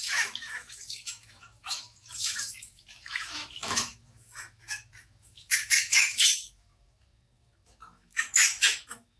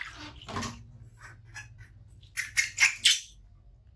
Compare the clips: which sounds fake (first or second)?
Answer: first